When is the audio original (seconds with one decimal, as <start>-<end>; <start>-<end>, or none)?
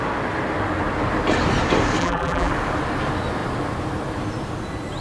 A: 0.0-2.0; 2.5-5.0